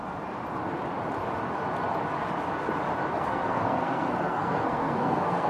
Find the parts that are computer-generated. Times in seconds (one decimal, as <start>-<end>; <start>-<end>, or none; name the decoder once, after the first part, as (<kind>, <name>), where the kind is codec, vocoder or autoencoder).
3.1-5.5 (codec, SNAC)